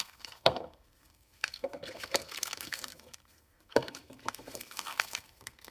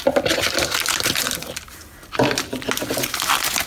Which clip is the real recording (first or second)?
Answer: second